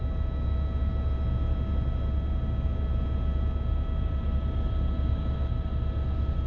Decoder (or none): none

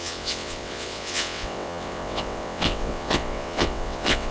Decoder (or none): vocoder, WaveNeXt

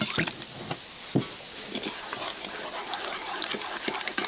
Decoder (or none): none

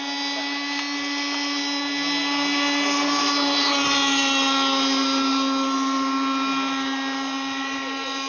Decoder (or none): none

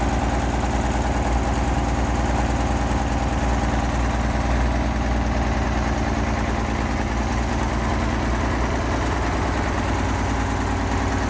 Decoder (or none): none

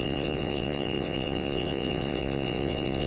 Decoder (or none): vocoder, WaveNeXt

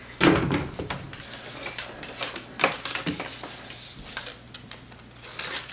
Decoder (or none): none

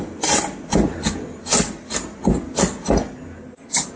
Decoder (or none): none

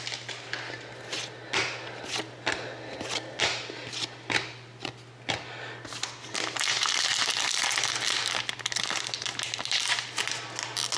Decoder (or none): none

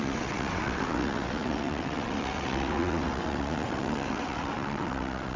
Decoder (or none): vocoder, WaveNeXt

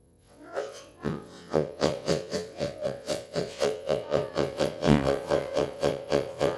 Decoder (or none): vocoder, WaveNeXt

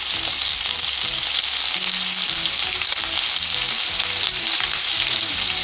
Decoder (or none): none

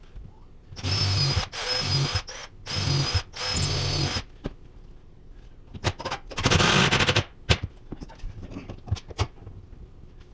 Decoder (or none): none